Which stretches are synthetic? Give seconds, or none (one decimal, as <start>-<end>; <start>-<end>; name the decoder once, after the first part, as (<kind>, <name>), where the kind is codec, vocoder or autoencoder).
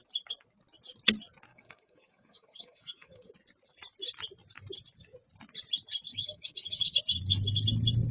1.5-3.3 (codec, DAC); 6.1-7.0